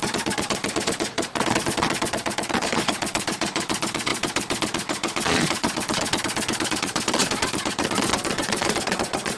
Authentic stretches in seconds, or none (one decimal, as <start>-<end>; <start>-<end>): none